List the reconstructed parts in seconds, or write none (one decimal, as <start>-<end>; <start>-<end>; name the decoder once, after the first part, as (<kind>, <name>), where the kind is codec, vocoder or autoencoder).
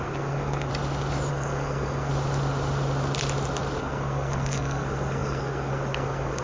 0.0-0.7 (codec, SNAC); 1.3-2.1; 3.8-6.4